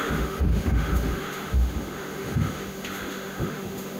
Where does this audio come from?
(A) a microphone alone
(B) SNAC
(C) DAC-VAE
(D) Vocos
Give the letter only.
C